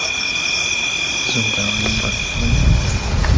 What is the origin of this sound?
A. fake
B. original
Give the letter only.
B